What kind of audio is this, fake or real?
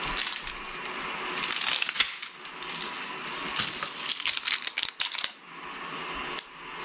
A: real